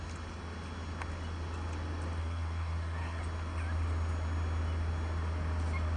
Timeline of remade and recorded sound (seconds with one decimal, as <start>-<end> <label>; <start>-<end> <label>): 0.0-2.2 recorded; 2.2-3.2 remade; 3.2-6.0 recorded